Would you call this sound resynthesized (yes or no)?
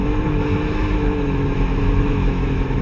yes